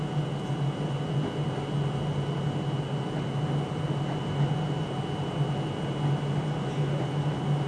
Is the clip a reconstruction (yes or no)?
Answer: no